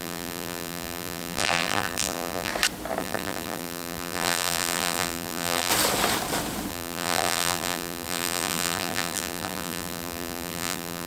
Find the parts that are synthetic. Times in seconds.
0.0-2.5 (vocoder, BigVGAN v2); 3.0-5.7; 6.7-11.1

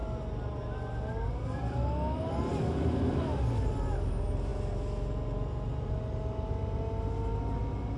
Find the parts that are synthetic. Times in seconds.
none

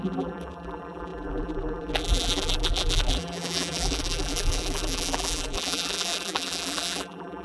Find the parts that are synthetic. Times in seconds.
0.0-7.4 (vocoder, BigVGAN v2)

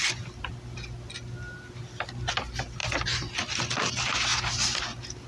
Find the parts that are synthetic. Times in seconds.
2.8-3.9 (vocoder, BigVGAN v2); 4.3-5.3

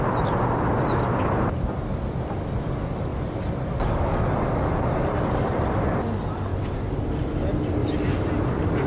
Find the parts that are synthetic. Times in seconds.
6.5-7.0 (vocoder, BigVGAN v2)

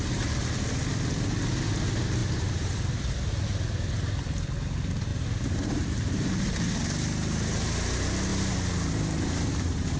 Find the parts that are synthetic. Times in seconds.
2.2-2.9 (vocoder, BigVGAN v2); 5.1-6.6